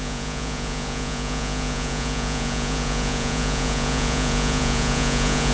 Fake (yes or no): yes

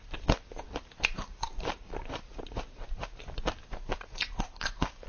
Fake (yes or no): yes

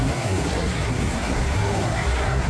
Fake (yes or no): yes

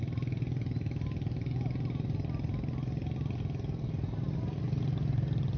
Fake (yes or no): no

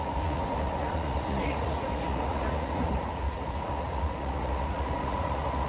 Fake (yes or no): yes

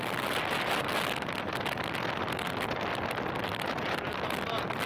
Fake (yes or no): no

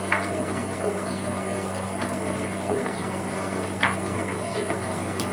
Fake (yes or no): yes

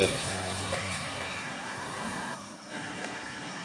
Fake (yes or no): yes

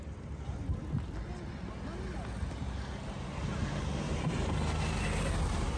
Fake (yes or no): no